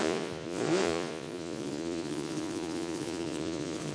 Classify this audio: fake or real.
fake